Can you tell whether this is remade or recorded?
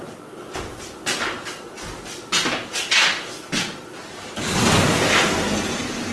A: recorded